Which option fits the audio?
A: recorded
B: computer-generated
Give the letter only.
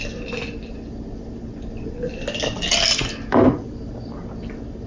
A